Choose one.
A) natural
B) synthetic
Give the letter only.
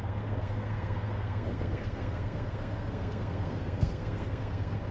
B